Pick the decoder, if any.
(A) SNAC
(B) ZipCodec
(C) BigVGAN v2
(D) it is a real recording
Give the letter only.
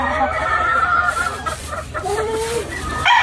C